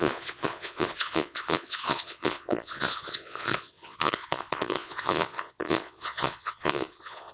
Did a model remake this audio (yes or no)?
yes